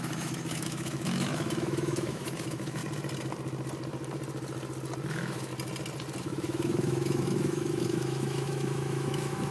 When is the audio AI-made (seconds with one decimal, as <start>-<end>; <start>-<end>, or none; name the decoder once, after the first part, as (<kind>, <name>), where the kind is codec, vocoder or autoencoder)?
0.0-2.8 (autoencoder, DAC-VAE); 5.1-5.5; 6.2-9.5